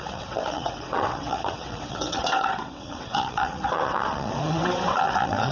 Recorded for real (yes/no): no